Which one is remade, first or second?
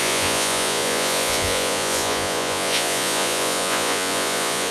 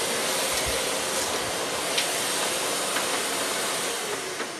first